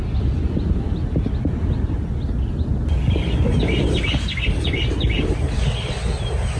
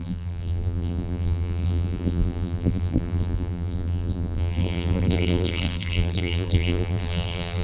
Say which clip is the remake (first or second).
second